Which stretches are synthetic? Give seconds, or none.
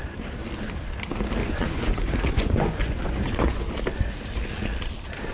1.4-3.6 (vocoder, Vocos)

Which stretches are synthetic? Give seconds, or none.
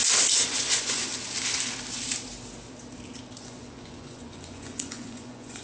0.5-1.1 (vocoder, Vocos); 3.4-5.6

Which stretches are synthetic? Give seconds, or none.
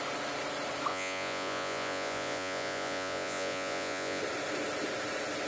0.9-4.2 (vocoder, Vocos)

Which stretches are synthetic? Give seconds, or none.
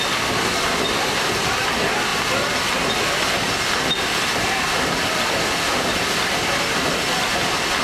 none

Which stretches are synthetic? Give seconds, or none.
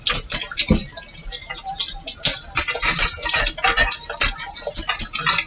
none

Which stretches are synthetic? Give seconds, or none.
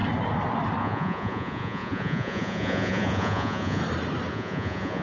0.8-3.8 (vocoder, Vocos); 4.3-5.0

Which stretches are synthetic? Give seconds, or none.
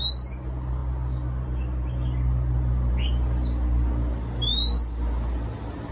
none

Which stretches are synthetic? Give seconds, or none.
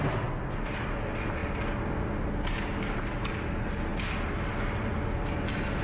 none